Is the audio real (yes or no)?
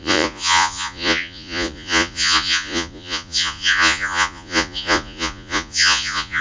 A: no